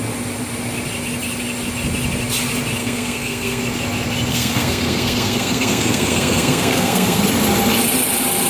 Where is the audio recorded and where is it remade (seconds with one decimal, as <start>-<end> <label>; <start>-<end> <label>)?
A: 0.0-2.8 recorded; 2.8-3.6 remade; 3.6-4.3 recorded; 4.3-7.2 remade; 7.2-8.5 recorded

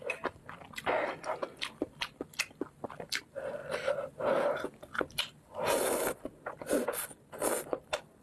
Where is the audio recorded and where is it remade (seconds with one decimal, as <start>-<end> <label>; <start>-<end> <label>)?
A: 0.0-8.2 recorded

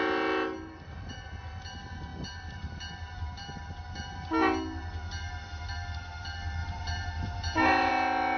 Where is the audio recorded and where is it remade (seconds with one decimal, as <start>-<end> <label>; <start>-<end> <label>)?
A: 0.0-6.6 recorded; 6.6-7.9 remade; 7.9-8.4 recorded

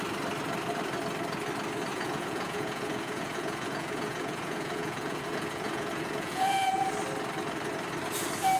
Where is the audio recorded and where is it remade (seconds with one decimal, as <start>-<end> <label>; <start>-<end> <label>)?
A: 0.0-1.9 recorded; 1.9-6.9 remade; 6.9-8.6 recorded